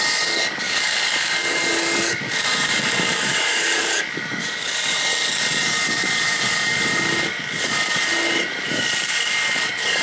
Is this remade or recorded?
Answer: remade